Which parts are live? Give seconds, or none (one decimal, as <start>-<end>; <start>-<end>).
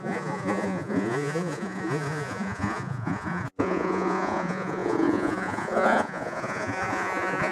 none